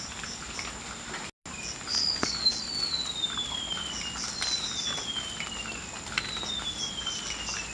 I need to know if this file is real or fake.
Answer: real